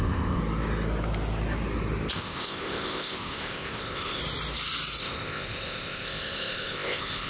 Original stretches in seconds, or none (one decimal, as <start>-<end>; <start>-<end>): 0.4-2.1; 4.2-5.0